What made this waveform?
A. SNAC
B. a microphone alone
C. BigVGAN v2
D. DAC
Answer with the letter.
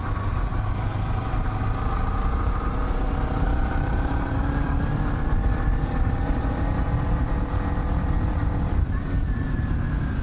C